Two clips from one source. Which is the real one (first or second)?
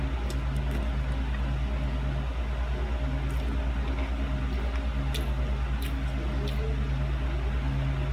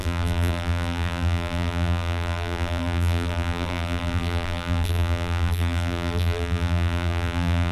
first